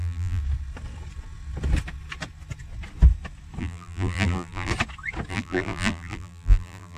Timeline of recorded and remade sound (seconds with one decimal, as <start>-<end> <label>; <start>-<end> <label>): 0.0-0.4 remade; 0.4-3.6 recorded; 3.6-4.7 remade; 4.7-5.3 recorded; 5.3-7.0 remade